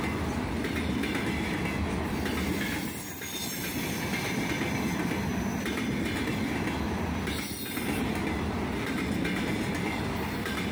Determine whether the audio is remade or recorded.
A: recorded